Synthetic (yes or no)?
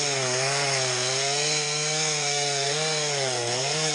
yes